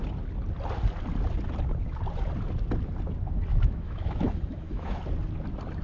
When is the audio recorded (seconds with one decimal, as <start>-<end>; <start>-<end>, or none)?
0.0-3.5; 5.0-5.8